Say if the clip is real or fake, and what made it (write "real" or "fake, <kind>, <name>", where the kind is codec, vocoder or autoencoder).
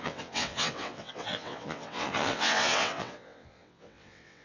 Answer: fake, vocoder, WaveNeXt